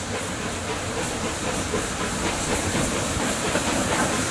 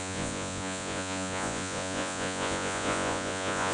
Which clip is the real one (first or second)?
first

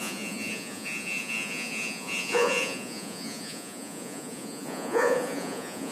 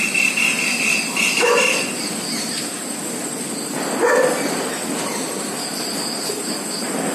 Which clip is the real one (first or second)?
second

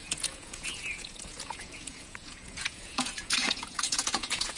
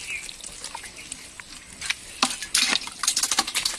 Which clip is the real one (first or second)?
second